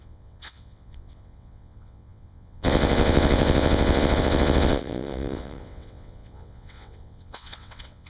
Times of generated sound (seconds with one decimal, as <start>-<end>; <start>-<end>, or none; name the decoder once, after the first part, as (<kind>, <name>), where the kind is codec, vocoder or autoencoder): 0.0-8.1 (vocoder, WaveNeXt)